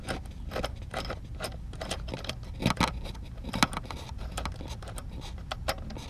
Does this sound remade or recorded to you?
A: recorded